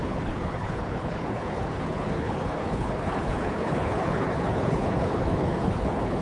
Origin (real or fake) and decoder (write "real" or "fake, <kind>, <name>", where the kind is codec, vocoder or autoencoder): fake, codec, HILCodec